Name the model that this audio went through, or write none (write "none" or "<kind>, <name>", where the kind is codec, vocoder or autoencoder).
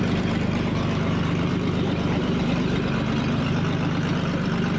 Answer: vocoder, BigVGAN v2